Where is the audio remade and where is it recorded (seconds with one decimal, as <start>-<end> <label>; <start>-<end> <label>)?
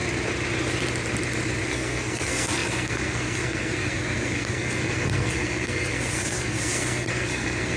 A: 0.0-1.7 recorded; 1.7-7.8 remade